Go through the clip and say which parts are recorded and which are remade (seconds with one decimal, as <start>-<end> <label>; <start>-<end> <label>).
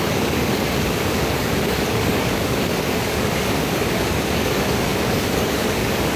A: 0.0-6.2 remade